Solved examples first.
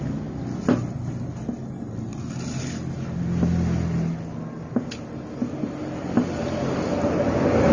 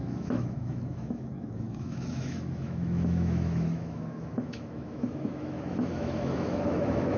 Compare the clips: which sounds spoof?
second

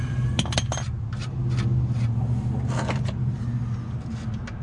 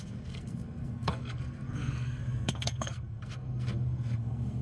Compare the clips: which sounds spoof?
second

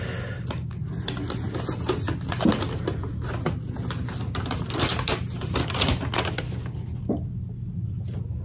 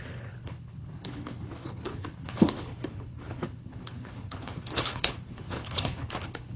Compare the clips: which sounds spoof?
second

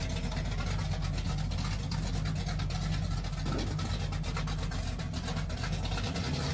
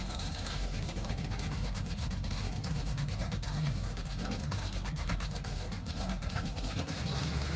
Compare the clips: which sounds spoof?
second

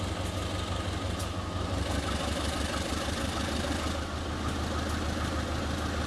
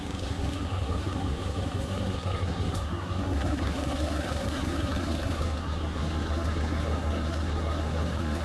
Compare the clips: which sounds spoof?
second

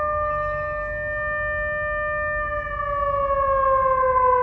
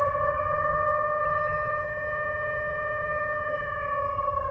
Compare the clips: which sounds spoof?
second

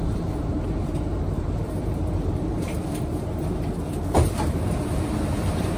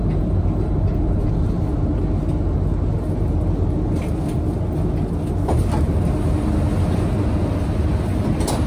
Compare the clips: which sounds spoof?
first